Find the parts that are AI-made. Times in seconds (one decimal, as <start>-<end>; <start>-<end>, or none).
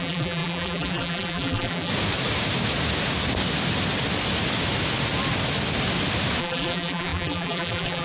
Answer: 0.0-1.9; 6.4-8.0